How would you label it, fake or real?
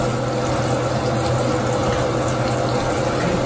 real